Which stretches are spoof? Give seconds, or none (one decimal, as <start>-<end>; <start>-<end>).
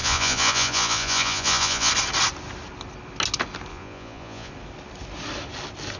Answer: 0.0-1.9; 3.7-4.5